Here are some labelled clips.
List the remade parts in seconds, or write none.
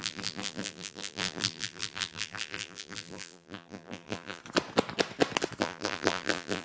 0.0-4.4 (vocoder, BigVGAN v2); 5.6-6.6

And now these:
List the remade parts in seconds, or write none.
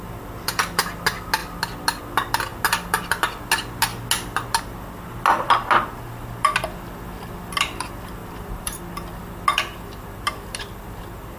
8.2-8.8 (vocoder, BigVGAN v2)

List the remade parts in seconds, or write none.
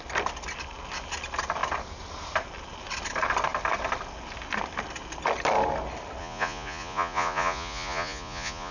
6.2-8.7 (vocoder, Vocos)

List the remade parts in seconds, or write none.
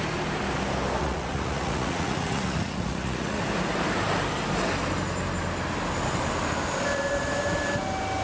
1.0-3.4 (vocoder, Vocos)